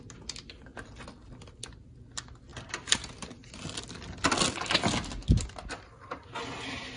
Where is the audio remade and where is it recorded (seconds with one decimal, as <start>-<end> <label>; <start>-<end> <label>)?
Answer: 0.0-7.0 recorded